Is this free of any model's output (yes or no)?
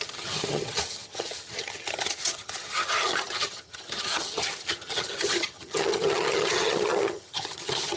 no